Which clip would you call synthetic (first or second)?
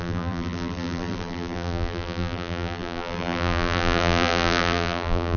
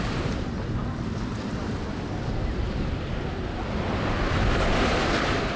first